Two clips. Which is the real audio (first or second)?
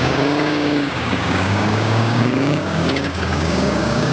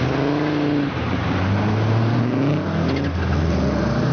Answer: second